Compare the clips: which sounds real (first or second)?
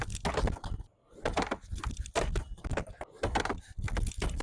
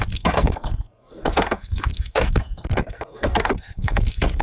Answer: first